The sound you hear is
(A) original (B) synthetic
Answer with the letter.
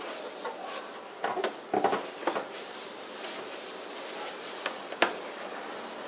A